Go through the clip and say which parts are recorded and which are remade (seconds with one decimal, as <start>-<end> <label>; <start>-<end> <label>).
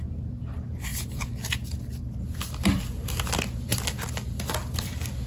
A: 0.0-5.3 recorded